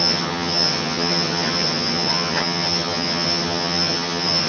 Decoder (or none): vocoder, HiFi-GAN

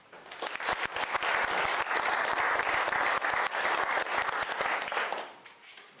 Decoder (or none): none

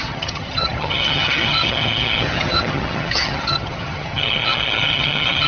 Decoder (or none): vocoder, HiFi-GAN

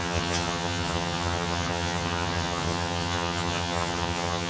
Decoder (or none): vocoder, HiFi-GAN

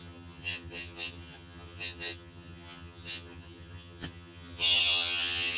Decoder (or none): vocoder, HiFi-GAN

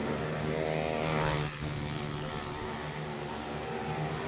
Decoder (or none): none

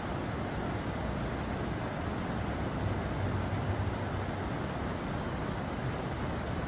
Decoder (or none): none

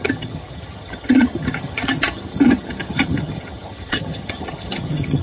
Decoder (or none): vocoder, HiFi-GAN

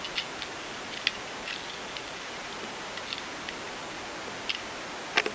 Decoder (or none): none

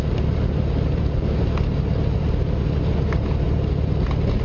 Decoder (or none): none